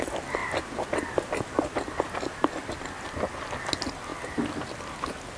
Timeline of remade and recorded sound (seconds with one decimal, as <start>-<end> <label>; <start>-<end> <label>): 0.0-5.4 recorded